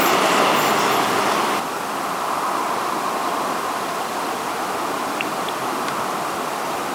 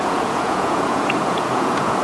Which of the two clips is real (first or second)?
first